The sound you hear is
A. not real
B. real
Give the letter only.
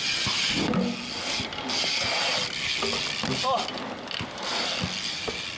B